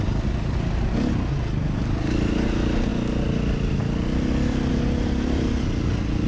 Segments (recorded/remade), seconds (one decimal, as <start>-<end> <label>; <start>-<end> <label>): 0.0-6.3 recorded